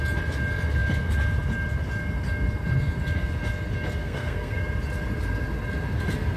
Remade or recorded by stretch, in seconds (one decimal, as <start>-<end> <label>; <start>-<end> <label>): 0.0-4.0 recorded; 4.0-4.6 remade; 4.6-6.4 recorded